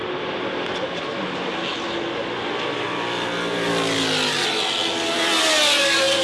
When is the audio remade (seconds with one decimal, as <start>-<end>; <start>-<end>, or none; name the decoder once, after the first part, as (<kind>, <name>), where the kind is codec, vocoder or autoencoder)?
none